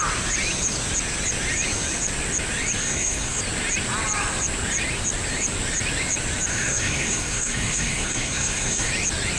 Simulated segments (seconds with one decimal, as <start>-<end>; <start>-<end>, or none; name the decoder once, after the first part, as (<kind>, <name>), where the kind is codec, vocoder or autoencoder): 2.8-3.4 (codec, SNAC); 6.5-8.9